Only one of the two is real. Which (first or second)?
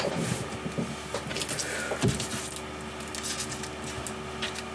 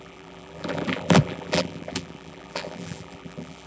first